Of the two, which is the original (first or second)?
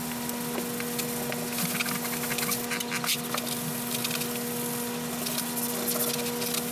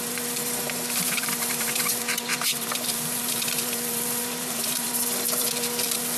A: first